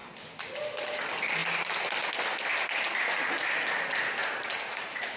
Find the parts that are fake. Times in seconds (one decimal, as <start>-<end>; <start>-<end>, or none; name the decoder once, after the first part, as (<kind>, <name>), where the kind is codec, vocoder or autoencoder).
4.2-5.2 (vocoder, BigVGAN v2)